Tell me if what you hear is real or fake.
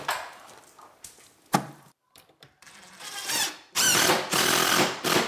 fake